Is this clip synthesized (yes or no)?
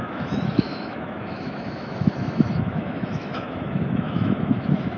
yes